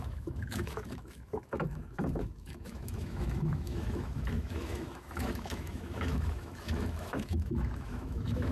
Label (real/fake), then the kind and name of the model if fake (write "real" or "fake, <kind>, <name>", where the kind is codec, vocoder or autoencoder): fake, autoencoder, DAC-VAE